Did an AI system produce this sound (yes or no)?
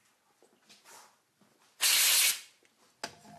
no